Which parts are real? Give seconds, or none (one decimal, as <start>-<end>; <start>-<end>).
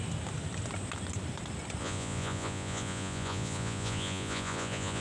0.0-1.8